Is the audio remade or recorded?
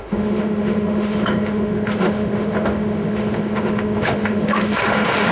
remade